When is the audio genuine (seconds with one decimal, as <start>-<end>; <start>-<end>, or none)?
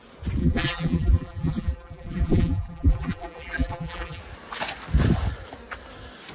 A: 0.0-0.4; 4.2-6.3